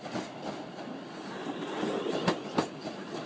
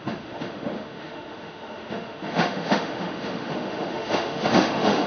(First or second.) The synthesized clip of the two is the second